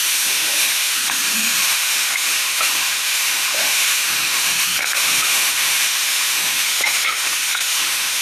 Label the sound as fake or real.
fake